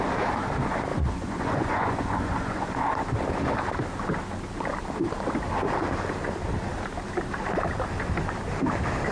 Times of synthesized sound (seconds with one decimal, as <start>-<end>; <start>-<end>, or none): 0.9-2.9